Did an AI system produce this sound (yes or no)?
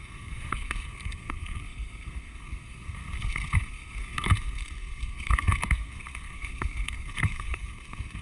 yes